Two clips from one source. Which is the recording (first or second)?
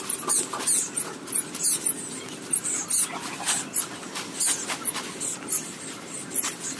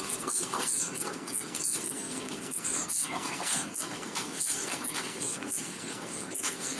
first